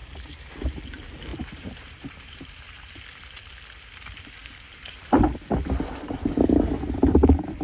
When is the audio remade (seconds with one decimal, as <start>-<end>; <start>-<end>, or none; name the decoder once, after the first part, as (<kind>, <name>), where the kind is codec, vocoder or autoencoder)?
0.0-0.8 (vocoder, BigVGAN v2); 1.3-2.9; 4.4-5.2